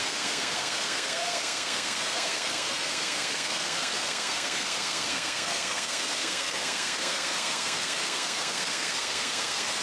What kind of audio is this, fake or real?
fake